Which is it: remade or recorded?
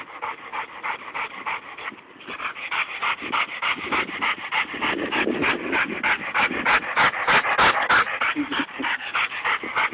recorded